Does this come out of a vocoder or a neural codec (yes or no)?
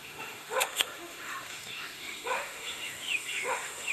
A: yes